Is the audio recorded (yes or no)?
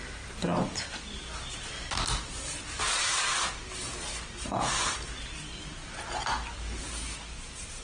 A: yes